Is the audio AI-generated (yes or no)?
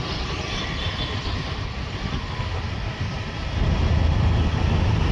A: no